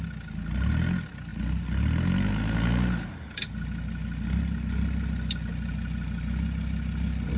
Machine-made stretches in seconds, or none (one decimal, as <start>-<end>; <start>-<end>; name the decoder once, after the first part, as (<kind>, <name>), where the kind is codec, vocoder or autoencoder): none